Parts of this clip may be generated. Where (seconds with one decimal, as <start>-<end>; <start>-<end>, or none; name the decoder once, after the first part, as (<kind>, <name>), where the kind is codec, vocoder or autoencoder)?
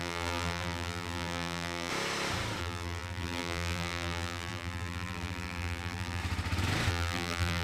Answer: 0.0-1.9 (vocoder, BigVGAN v2); 2.6-6.2; 6.9-7.6